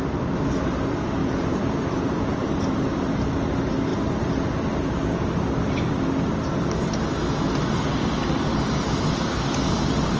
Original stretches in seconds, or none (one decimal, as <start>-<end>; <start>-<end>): 0.0-1.2; 3.1-8.2